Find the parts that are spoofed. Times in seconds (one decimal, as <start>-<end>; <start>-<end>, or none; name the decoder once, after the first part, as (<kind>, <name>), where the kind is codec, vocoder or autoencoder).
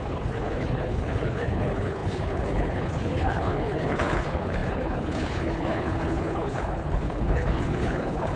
0.0-8.4 (codec, HILCodec)